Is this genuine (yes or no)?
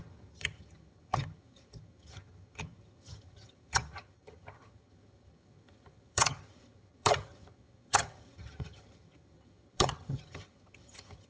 no